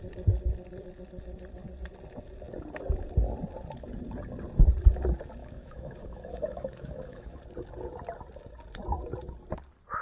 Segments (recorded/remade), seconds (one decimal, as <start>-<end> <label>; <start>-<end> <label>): 0.0-5.4 recorded; 5.4-7.4 remade; 7.4-10.0 recorded